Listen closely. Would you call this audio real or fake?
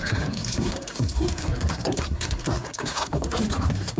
fake